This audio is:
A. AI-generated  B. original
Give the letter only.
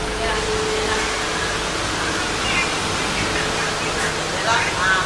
B